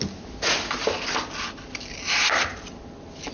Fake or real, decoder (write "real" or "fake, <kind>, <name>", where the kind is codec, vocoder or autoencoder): real